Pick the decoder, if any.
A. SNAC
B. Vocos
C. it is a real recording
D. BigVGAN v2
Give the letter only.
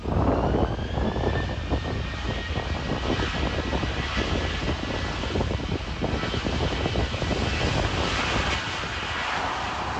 C